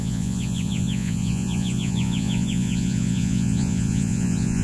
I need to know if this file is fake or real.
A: fake